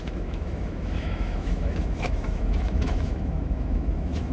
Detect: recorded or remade remade